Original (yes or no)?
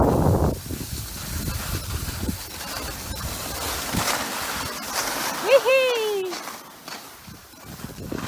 yes